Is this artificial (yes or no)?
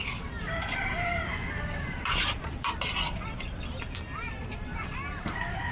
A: yes